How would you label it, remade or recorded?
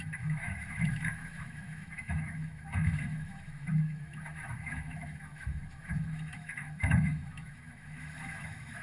remade